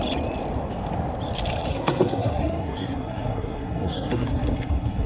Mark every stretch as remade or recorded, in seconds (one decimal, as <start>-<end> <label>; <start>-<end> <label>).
0.0-1.7 recorded; 1.7-5.1 remade